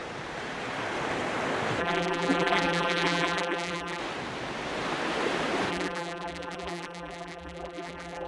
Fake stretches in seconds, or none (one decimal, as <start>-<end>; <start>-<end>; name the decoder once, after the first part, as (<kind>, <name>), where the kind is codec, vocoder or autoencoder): 1.8-4.0 (vocoder, BigVGAN v2); 5.7-8.3